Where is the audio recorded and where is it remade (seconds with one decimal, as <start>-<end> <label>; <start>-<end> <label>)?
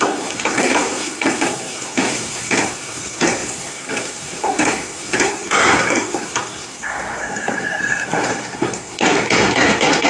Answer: 0.0-10.1 remade